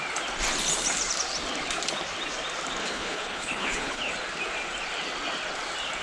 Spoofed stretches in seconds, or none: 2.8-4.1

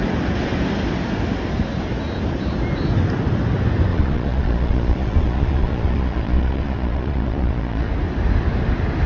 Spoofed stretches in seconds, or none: 3.9-7.9

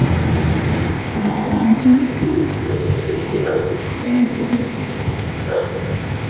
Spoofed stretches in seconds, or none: 0.9-6.3

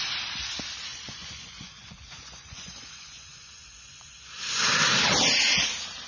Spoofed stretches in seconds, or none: 0.9-4.6